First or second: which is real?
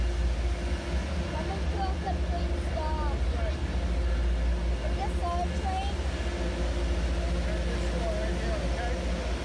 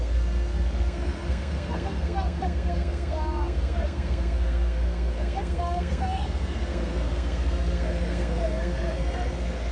first